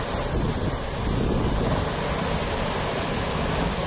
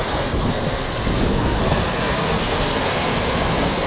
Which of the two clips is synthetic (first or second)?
second